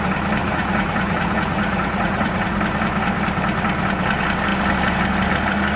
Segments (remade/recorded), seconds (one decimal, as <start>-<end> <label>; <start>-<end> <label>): 0.0-0.4 recorded; 0.4-2.6 remade; 2.6-5.8 recorded